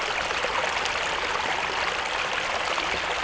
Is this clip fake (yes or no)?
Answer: no